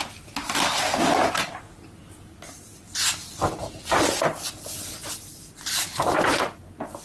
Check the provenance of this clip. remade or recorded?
recorded